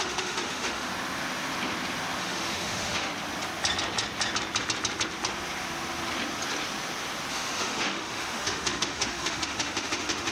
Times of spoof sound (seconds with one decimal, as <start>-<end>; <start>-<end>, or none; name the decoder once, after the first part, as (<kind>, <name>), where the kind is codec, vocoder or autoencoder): 0.0-0.9 (autoencoder, DAC-VAE); 2.2-3.1; 7.3-10.3